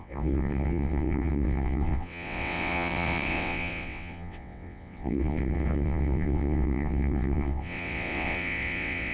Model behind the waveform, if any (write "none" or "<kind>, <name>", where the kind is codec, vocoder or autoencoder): vocoder, WaveNeXt